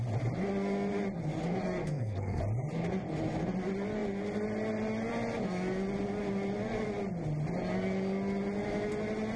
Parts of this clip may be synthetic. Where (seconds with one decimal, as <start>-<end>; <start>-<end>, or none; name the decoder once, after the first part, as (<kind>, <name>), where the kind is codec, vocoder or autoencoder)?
1.8-2.4 (codec, SNAC)